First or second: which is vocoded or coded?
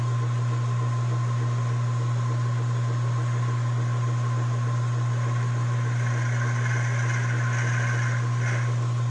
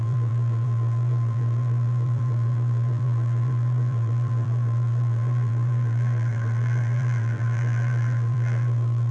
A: second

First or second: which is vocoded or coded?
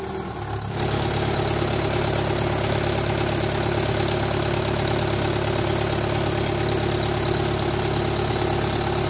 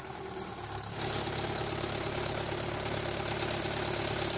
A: second